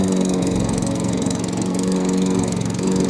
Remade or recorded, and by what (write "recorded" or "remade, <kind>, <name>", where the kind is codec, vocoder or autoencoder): remade, codec, SNAC